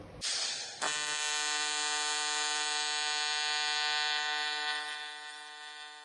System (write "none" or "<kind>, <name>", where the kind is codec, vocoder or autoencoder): none